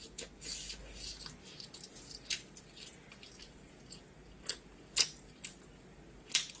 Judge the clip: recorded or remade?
recorded